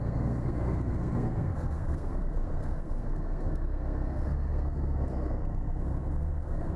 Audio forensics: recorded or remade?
remade